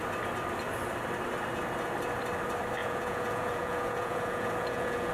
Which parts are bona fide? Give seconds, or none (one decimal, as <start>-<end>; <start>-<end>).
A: 0.0-2.8